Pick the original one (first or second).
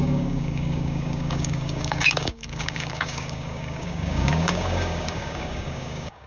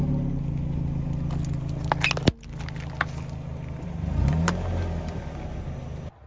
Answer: second